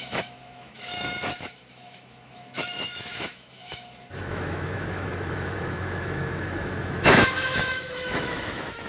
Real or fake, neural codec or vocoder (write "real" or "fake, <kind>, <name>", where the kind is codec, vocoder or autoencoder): fake, autoencoder, DAC-VAE